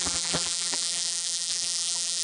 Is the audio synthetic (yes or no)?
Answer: yes